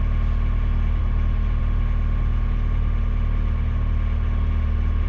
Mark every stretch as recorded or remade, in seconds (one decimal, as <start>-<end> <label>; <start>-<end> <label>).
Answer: 0.0-1.0 recorded; 1.0-1.6 remade; 1.6-5.1 recorded